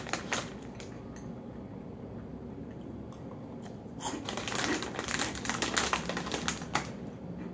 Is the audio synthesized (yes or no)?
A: no